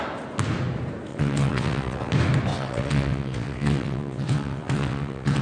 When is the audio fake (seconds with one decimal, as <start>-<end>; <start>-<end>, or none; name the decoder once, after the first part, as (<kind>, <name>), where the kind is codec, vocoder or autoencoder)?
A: 1.1-2.1 (vocoder, WaveNeXt); 2.5-5.4